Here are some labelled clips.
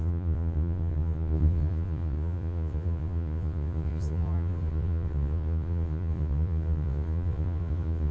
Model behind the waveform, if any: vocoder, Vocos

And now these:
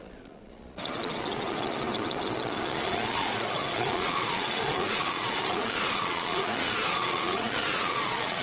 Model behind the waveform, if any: vocoder, Vocos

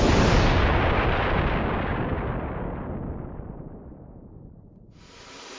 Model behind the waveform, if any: none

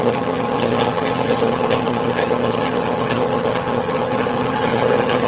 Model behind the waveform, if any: vocoder, HiFi-GAN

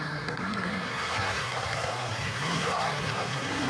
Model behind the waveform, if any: codec, SNAC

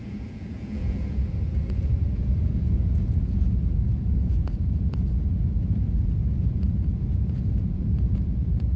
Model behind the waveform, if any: vocoder, Vocos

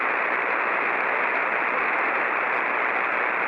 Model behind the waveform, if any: none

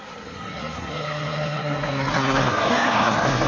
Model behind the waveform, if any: codec, SNAC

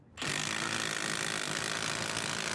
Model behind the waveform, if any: none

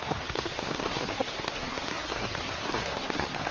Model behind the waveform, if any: codec, SNAC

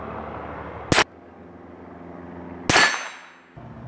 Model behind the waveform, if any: none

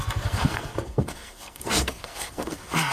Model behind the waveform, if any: codec, SNAC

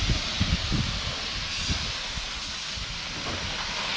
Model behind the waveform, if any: none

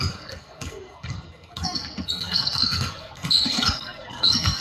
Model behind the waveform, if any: codec, SNAC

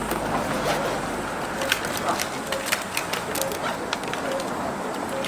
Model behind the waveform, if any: none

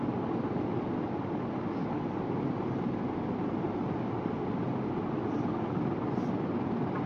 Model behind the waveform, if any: none